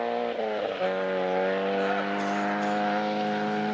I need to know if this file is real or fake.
real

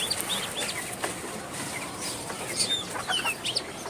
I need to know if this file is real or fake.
real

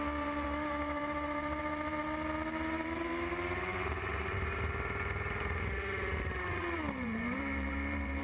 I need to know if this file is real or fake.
fake